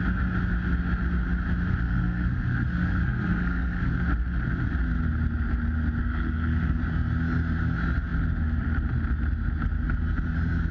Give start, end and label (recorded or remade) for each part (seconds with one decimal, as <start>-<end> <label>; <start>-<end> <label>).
0.0-1.7 recorded; 1.7-3.9 remade; 3.9-6.0 recorded; 6.0-6.8 remade; 6.8-10.7 recorded